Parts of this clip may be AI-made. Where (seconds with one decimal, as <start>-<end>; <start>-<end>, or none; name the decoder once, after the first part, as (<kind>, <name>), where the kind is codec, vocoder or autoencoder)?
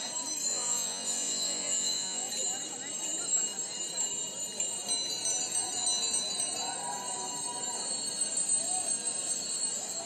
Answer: 0.5-2.3 (vocoder, Vocos)